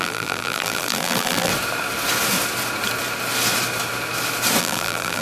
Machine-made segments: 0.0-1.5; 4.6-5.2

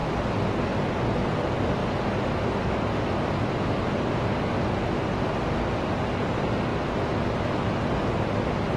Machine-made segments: none

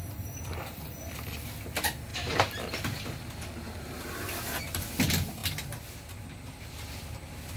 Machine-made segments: 0.0-2.1; 4.6-5.4; 6.6-7.6

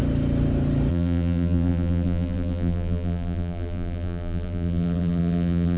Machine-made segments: 0.9-5.8